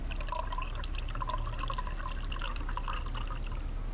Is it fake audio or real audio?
real